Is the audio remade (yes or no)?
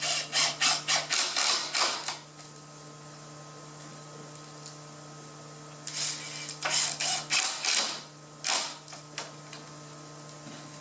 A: no